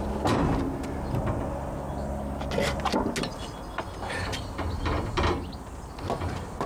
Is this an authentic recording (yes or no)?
yes